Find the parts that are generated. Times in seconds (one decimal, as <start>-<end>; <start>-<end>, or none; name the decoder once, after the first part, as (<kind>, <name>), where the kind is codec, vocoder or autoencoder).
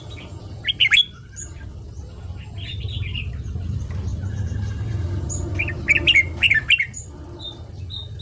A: none